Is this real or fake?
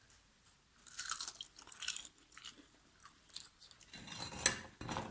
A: real